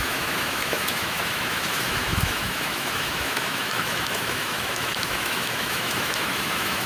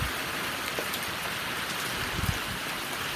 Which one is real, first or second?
second